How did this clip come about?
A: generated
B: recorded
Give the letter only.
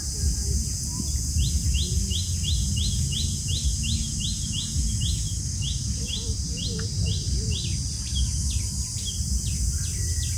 B